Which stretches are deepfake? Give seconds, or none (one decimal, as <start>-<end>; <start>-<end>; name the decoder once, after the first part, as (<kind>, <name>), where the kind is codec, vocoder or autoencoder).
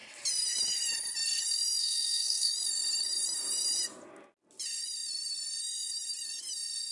1.8-2.5 (codec, SNAC)